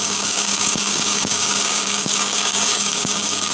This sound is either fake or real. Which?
fake